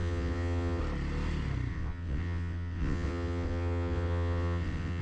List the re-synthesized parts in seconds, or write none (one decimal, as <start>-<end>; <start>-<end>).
0.0-0.8; 1.7-5.0